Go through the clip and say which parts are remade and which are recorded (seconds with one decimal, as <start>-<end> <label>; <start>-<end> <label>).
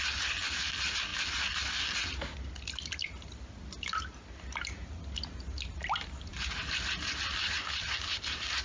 0.0-8.6 recorded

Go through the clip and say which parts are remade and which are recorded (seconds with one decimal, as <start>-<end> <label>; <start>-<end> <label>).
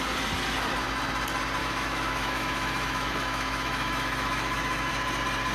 0.0-1.6 recorded; 1.6-4.9 remade; 4.9-5.5 recorded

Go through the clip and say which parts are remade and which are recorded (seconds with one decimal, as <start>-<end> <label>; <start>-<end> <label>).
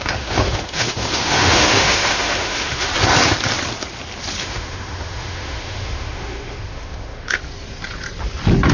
0.0-2.9 remade; 2.9-4.4 recorded; 4.4-7.4 remade; 7.4-8.7 recorded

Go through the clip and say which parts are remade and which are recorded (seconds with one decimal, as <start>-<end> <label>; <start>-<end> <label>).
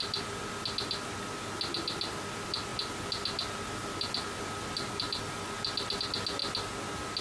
0.0-7.2 recorded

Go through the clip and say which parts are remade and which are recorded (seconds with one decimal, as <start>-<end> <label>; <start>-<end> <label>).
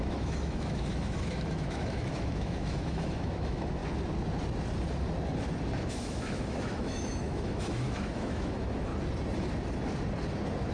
0.0-3.8 remade; 3.8-5.9 recorded; 5.9-8.9 remade; 8.9-10.7 recorded